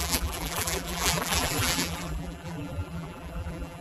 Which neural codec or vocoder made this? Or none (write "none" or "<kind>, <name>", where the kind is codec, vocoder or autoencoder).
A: vocoder, BigVGAN v2